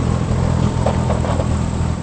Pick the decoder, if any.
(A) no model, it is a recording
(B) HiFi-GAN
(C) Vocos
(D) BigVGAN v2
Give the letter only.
D